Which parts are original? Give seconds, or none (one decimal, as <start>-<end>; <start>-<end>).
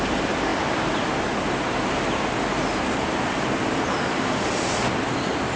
0.0-5.6